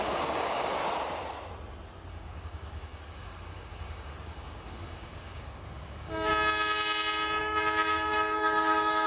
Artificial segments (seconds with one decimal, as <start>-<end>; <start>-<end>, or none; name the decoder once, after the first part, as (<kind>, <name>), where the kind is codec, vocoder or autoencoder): 0.0-0.8 (codec, DAC); 2.1-6.3; 7.4-9.1

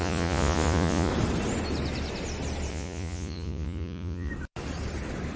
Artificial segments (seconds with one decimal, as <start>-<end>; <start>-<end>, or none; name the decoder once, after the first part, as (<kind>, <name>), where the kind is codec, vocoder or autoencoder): 0.0-1.1 (vocoder, Vocos); 2.7-4.3

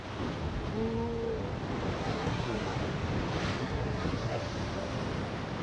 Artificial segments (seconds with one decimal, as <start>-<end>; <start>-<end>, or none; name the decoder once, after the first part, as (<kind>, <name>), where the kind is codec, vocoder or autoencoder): 2.0-2.8 (codec, SNAC); 3.6-4.4

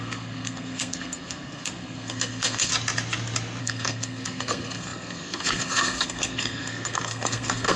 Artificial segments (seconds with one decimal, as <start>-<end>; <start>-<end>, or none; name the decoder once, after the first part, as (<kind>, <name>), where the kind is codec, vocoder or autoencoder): 0.0-2.7 (codec, SNAC); 3.6-7.8

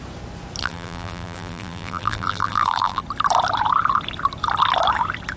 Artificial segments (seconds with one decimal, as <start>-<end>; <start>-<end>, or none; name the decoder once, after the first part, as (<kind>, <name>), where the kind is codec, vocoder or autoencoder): 0.6-3.0 (vocoder, BigVGAN v2)

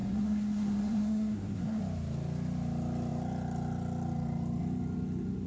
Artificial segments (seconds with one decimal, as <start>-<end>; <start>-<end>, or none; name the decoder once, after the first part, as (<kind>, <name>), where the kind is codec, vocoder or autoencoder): 0.0-1.8 (codec, SNAC)

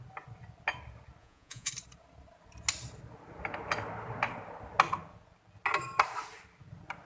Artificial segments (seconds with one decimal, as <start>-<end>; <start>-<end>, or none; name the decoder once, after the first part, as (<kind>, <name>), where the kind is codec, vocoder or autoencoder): 1.2-1.7 (vocoder, Vocos)